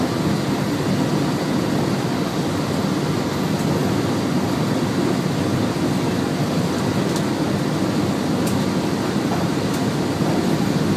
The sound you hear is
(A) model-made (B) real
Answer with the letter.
B